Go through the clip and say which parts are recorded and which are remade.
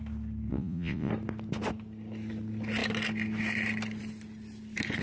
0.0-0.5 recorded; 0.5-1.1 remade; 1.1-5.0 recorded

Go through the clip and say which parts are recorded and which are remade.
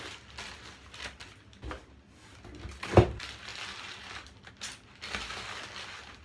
0.0-6.2 recorded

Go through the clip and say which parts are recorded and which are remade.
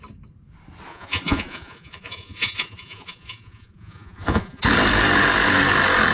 0.0-0.9 recorded; 0.9-4.6 remade; 4.6-6.1 recorded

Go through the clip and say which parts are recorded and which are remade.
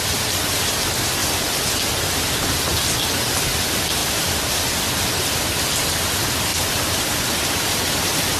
0.0-6.5 recorded; 6.5-7.2 remade; 7.2-8.4 recorded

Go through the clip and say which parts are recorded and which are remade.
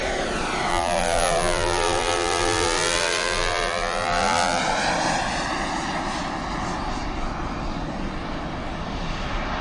0.0-0.7 recorded; 0.7-4.6 remade; 4.6-9.6 recorded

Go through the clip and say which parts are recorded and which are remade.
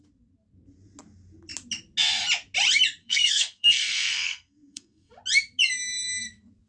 0.0-3.0 recorded; 3.0-5.1 remade; 5.1-6.7 recorded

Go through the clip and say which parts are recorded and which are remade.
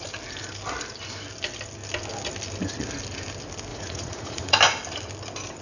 0.0-3.7 recorded; 3.7-4.6 remade; 4.6-5.6 recorded